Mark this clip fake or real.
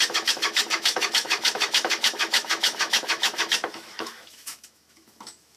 fake